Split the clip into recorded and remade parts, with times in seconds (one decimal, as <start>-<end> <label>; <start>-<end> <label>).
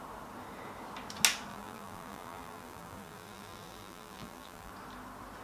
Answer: 0.0-1.5 recorded; 1.5-4.7 remade; 4.7-5.4 recorded